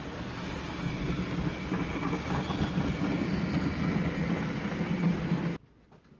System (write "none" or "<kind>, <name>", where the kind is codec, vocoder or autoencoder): none